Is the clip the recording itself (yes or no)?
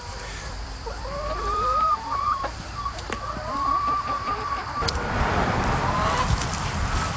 no